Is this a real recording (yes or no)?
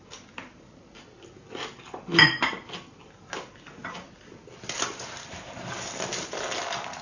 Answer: yes